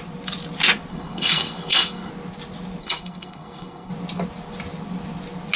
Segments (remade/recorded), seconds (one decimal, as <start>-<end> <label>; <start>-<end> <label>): 0.0-0.9 recorded; 0.9-2.1 remade; 2.1-2.8 recorded; 2.8-3.9 remade; 3.9-5.6 recorded